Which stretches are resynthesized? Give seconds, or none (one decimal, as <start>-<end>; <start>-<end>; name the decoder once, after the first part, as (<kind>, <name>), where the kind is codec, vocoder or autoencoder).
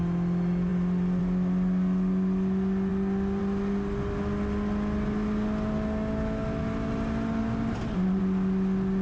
7.4-8.2 (vocoder, BigVGAN v2)